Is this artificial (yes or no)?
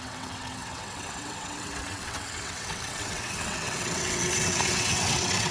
yes